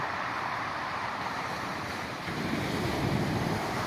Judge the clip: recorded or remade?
remade